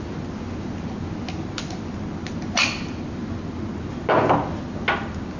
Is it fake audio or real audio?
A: real